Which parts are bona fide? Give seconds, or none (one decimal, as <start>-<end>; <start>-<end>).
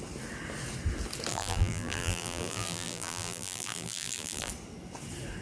0.0-1.3; 4.5-5.4